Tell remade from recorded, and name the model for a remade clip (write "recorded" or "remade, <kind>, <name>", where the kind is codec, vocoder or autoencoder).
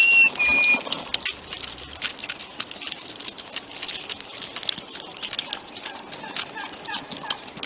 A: recorded